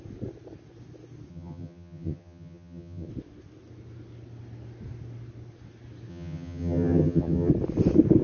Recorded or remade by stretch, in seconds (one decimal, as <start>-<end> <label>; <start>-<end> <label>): 0.0-1.3 recorded; 1.3-3.1 remade; 3.1-6.1 recorded; 6.1-7.5 remade; 7.5-8.2 recorded